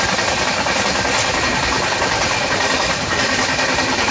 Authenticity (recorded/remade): recorded